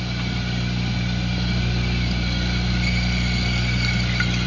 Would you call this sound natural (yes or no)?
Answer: yes